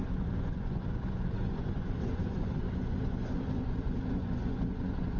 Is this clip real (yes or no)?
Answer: no